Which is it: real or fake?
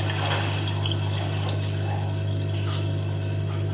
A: real